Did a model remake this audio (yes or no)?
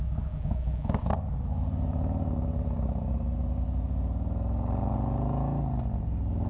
no